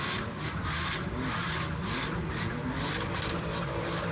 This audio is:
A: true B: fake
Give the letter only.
A